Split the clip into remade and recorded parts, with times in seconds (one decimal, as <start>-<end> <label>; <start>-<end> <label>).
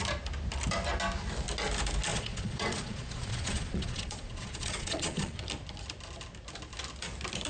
0.0-2.1 recorded; 2.1-5.4 remade; 5.4-7.5 recorded